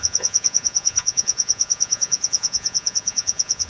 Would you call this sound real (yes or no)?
no